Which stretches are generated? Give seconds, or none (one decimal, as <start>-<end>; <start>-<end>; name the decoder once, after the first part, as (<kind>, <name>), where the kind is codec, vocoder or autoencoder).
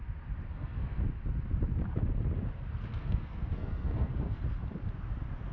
0.5-1.0 (codec, SNAC); 2.9-4.4